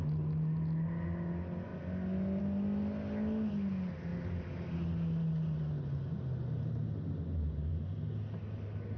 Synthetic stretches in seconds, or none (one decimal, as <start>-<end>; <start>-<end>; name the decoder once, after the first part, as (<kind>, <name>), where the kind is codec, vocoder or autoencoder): none